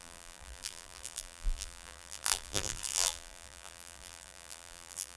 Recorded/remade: remade